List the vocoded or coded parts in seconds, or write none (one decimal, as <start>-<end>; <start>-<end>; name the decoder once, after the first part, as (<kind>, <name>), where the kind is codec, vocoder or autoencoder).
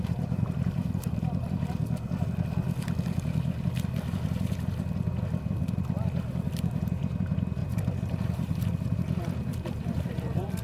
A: 0.0-1.8 (vocoder, BigVGAN v2); 6.7-10.6